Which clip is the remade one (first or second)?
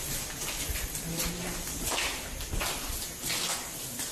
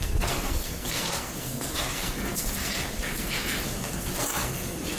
second